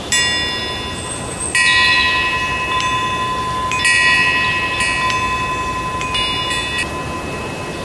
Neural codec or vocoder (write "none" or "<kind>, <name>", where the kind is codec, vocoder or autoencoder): none